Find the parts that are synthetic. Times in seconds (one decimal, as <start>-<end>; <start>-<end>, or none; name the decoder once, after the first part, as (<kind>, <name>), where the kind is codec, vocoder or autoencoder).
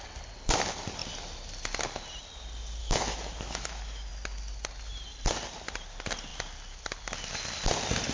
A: 2.8-4.1 (autoencoder, DAC-VAE)